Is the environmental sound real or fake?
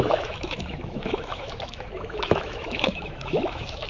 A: fake